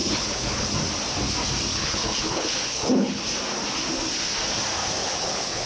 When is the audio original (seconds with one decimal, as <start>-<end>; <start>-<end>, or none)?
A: 0.7-1.7; 3.2-5.0